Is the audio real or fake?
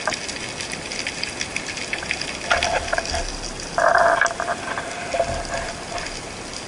real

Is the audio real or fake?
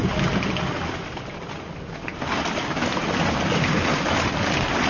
real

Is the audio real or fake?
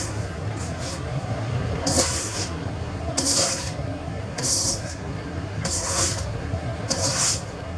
fake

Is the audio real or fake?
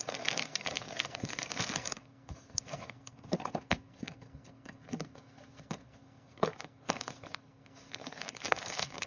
fake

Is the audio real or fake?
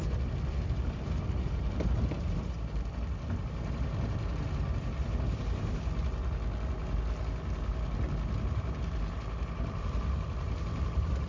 real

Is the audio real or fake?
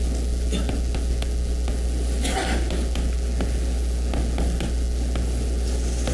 real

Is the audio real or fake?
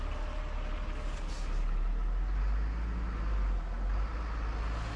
real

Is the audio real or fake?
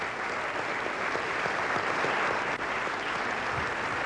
real